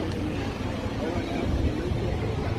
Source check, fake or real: real